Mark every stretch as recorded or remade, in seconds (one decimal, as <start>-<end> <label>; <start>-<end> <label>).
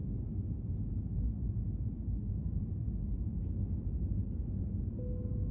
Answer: 0.0-5.5 recorded